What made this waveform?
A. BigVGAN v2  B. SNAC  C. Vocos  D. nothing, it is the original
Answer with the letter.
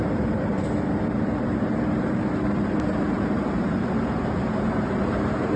A